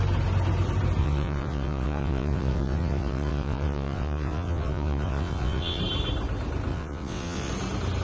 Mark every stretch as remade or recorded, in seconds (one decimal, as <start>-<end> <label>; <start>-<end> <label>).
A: 0.0-1.0 recorded; 1.0-5.8 remade; 5.8-6.7 recorded; 6.7-7.5 remade; 7.5-8.0 recorded